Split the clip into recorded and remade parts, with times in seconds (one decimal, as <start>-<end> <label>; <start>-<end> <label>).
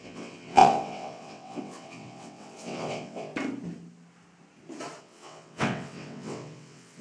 0.0-3.3 remade; 3.3-5.0 recorded; 5.0-7.0 remade